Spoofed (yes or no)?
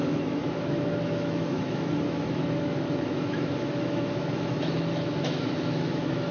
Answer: yes